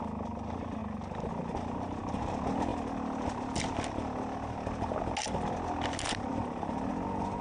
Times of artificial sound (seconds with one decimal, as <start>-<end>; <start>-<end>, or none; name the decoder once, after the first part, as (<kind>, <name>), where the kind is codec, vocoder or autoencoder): none